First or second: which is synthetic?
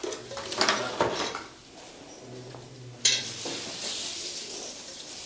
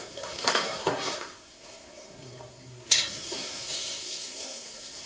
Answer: second